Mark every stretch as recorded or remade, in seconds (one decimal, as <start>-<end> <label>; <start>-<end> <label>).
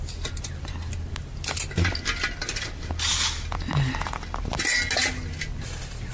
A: 0.0-6.1 recorded